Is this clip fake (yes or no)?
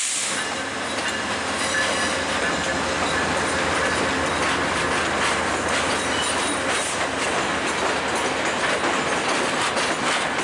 no